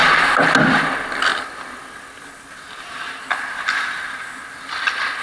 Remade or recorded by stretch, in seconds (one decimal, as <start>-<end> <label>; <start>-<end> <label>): 0.0-5.2 recorded